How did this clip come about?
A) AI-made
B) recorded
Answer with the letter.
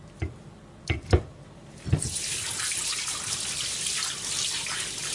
B